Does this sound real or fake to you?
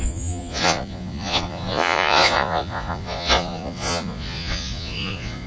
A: fake